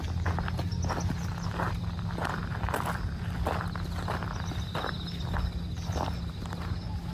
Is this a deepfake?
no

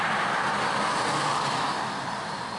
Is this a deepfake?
no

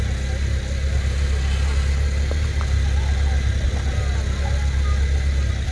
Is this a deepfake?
no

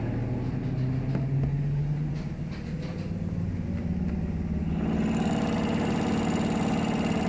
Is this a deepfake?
no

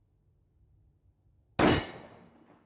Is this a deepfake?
no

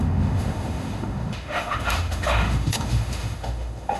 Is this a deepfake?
yes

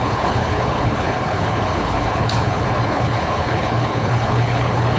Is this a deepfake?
yes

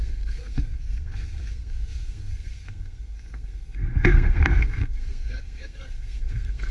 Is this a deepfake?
yes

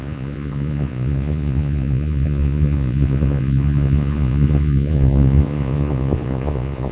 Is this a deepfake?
yes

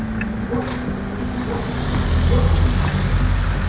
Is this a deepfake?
no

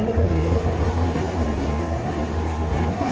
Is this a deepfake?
yes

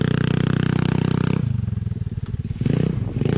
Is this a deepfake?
no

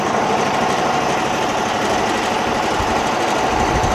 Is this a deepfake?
no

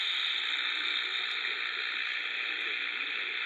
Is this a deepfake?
no